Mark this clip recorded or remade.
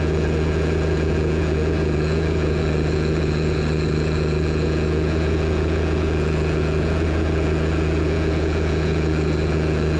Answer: remade